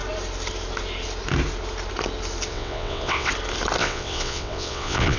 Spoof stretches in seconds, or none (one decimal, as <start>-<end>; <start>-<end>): 2.5-3.3; 3.8-5.2